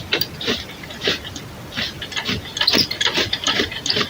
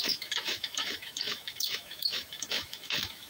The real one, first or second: first